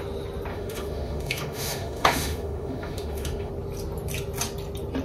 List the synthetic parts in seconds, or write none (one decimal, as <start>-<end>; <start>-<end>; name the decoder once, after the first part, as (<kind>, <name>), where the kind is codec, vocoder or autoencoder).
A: 0.5-3.5 (autoencoder, DAC-VAE)